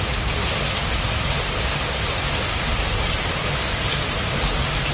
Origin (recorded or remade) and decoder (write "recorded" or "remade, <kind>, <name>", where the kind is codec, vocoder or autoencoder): recorded